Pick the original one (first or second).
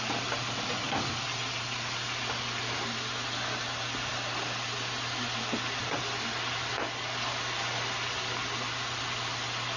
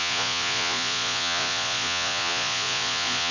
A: first